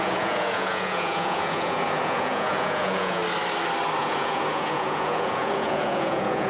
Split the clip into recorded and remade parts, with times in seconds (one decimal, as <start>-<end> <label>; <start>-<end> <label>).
0.0-3.2 remade; 3.2-4.0 recorded; 4.0-6.5 remade